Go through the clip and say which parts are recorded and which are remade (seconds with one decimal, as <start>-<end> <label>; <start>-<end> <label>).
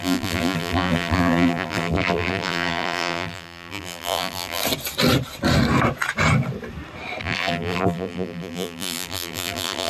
0.0-4.6 remade; 4.6-7.2 recorded; 7.2-9.9 remade